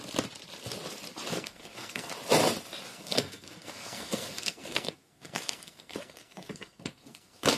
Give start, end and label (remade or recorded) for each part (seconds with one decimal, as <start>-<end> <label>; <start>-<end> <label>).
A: 0.0-1.3 recorded; 1.3-2.1 remade; 2.1-2.9 recorded; 2.9-7.6 remade